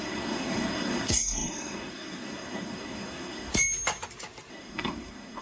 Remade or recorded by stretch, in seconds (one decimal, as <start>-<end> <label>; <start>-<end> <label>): 0.0-3.5 remade; 3.5-4.5 recorded; 4.5-5.4 remade

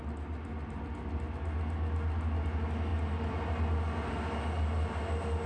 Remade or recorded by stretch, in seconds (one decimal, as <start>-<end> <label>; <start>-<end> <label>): 0.0-5.5 recorded

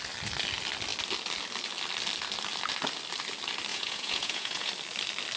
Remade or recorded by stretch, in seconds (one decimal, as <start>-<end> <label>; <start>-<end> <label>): 0.0-3.7 recorded; 3.7-4.7 remade; 4.7-5.4 recorded

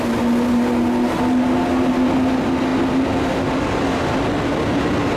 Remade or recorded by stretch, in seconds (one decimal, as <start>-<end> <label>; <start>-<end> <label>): 0.0-5.2 recorded

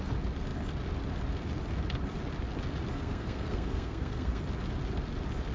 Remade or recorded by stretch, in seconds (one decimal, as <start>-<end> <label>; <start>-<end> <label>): 0.0-2.9 recorded; 2.9-4.4 remade; 4.4-5.5 recorded